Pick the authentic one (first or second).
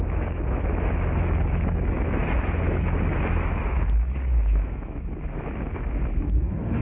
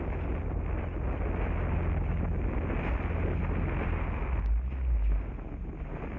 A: second